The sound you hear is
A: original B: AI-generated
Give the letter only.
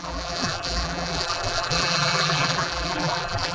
B